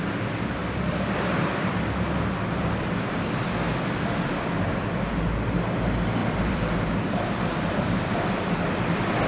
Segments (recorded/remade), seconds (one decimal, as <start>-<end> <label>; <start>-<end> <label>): 0.0-3.7 recorded; 3.7-4.3 remade; 4.3-6.2 recorded; 6.2-8.2 remade; 8.2-9.3 recorded